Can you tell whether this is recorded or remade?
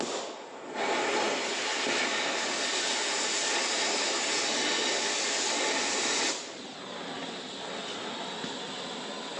recorded